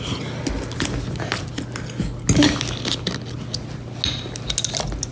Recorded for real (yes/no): yes